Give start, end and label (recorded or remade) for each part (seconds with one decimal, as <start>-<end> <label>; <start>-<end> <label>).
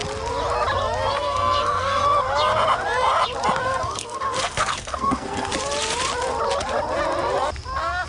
0.0-1.1 recorded; 1.1-2.0 remade; 2.0-3.6 recorded; 3.6-5.5 remade; 5.5-8.1 recorded